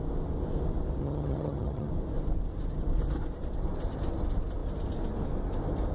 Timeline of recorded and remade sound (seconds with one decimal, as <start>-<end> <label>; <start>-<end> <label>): 0.0-1.0 recorded; 1.0-1.9 remade; 1.9-5.9 recorded